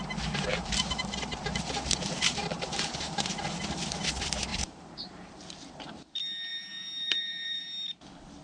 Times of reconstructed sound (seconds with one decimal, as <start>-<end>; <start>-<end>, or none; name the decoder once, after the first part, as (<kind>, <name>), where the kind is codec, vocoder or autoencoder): 0.5-2.6 (vocoder, BigVGAN v2); 4.5-5.5; 6.5-8.0